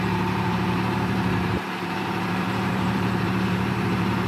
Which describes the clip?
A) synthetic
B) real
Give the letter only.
A